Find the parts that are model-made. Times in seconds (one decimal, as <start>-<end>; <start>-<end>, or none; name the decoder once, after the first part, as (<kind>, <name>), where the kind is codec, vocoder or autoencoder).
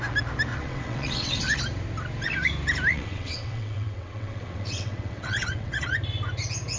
0.5-1.4 (vocoder, WaveNeXt); 2.9-6.0